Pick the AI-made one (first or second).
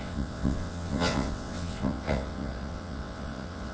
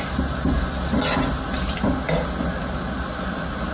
first